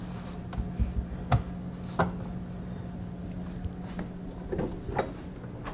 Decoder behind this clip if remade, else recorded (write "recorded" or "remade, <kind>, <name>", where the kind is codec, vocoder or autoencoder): recorded